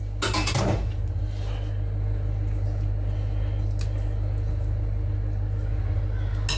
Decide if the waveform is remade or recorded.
recorded